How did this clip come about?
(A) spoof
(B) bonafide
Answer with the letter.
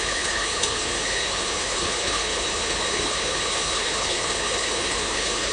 A